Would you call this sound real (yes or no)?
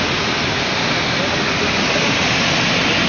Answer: yes